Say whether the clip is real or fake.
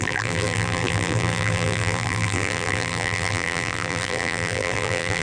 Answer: fake